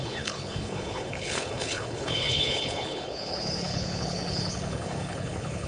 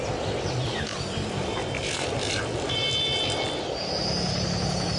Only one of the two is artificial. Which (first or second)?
first